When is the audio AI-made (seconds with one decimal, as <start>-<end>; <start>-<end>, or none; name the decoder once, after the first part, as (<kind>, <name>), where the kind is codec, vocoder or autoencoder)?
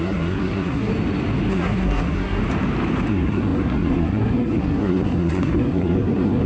0.0-0.9 (codec, SNAC); 1.5-2.4; 3.1-6.5